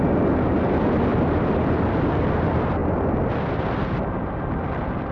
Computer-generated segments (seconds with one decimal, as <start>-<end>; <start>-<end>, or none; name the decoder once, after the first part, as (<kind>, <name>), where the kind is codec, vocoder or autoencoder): 1.1-2.3 (vocoder, BigVGAN v2); 2.8-5.1